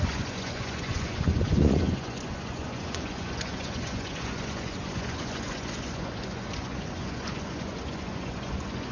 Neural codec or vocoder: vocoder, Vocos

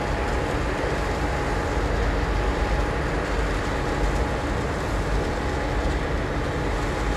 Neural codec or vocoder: none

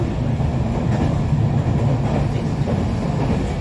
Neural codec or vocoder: none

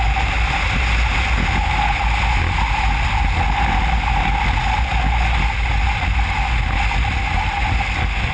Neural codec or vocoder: none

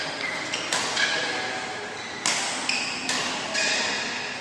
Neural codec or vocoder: none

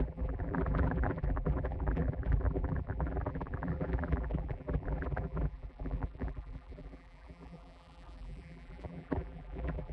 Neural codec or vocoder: vocoder, BigVGAN v2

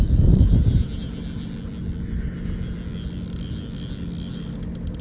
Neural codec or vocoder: none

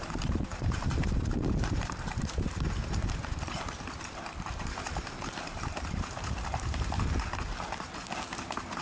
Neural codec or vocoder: vocoder, BigVGAN v2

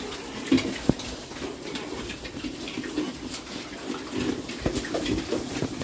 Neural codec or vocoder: vocoder, BigVGAN v2